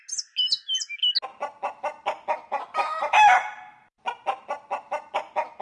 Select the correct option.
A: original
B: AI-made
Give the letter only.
A